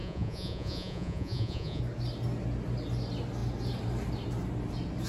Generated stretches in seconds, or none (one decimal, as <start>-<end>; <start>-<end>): 0.0-1.8